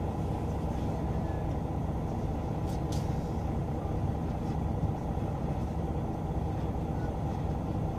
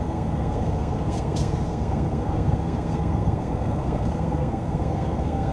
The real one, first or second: first